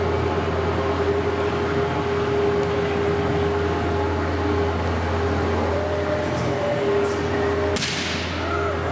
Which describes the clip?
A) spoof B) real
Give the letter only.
B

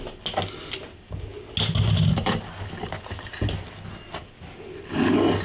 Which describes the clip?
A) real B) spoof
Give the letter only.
A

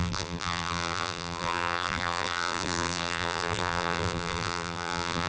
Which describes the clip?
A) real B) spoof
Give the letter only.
B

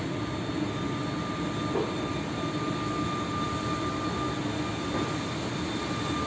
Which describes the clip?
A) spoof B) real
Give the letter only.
B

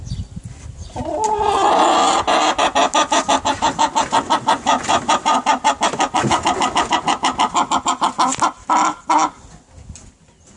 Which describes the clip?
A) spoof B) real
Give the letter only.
B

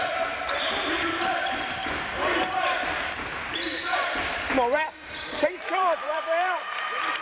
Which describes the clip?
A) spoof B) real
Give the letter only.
A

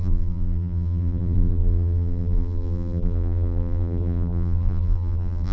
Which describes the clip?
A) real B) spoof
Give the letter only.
B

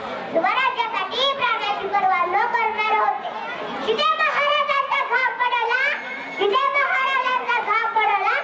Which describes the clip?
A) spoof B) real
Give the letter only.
B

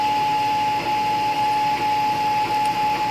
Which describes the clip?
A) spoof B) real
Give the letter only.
B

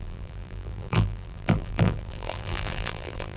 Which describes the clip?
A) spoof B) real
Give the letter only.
A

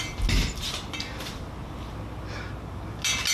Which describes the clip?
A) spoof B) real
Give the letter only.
B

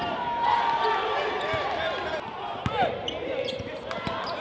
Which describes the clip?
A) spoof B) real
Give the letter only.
B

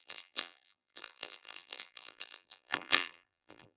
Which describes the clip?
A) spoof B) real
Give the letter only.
A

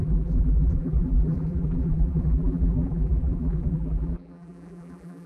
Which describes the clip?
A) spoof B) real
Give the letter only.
A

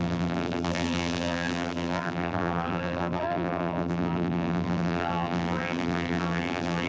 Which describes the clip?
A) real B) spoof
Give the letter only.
B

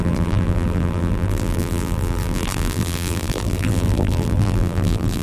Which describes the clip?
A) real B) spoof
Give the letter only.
B